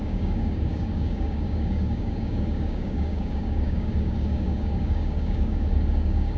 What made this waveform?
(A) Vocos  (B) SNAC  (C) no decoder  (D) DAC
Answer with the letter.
D